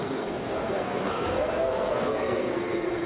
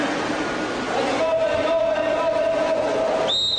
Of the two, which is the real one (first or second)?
second